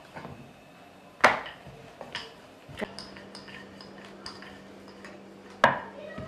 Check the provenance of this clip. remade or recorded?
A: recorded